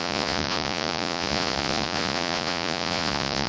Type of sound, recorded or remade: remade